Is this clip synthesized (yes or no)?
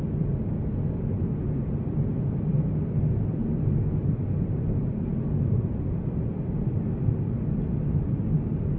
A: no